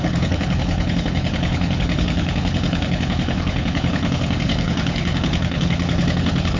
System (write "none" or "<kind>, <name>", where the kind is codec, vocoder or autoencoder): codec, HILCodec